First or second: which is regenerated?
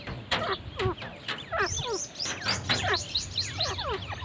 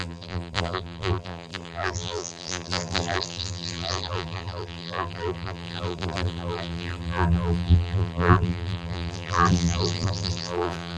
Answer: second